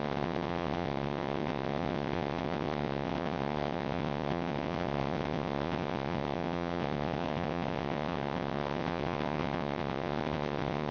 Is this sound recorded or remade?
remade